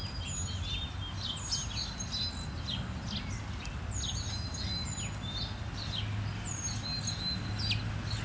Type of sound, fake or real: real